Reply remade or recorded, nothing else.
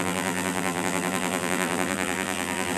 remade